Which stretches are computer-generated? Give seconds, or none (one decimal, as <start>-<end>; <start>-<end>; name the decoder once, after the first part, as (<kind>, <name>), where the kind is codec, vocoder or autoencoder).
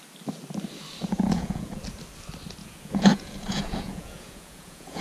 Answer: 1.0-1.8 (vocoder, Vocos); 2.6-5.0